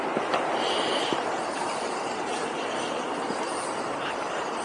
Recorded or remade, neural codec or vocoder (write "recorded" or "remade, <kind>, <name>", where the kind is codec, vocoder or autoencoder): remade, vocoder, BigVGAN v2